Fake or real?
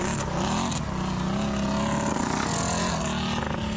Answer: real